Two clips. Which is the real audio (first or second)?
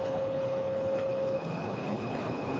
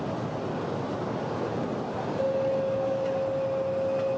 second